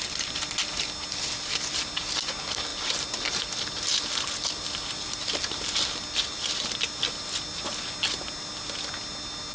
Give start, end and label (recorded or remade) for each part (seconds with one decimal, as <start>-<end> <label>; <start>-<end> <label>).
0.0-9.5 recorded